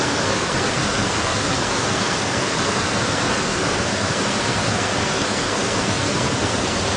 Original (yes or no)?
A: no